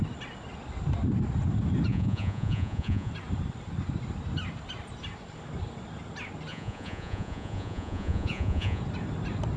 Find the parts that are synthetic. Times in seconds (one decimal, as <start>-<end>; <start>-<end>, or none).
1.9-3.1; 6.5-8.8